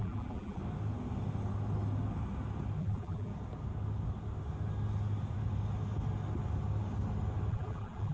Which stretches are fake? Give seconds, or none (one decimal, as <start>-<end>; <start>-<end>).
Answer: 0.0-0.6; 2.8-3.3; 7.5-8.1